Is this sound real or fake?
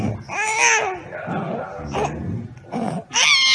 real